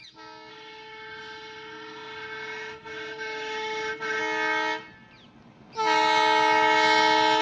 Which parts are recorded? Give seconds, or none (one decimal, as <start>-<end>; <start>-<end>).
0.0-0.5; 4.2-7.4